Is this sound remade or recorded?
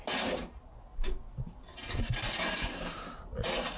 recorded